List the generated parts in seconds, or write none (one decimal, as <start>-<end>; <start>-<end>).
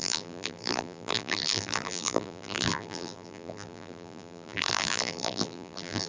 0.0-6.1